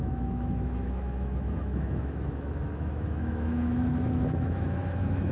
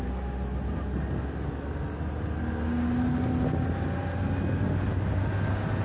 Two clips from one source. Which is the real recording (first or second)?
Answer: second